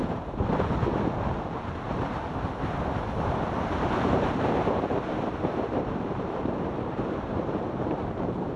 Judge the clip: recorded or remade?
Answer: remade